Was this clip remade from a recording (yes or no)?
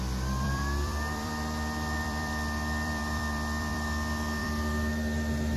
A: yes